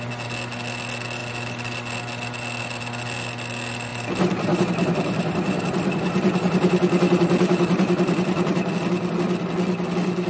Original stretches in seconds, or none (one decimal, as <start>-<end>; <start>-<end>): 0.0-3.9; 8.7-10.3